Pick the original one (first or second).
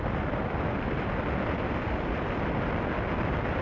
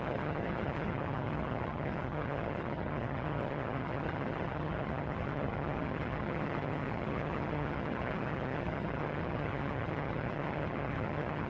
first